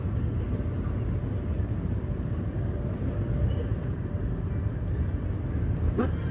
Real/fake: real